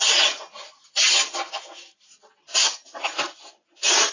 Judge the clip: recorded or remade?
recorded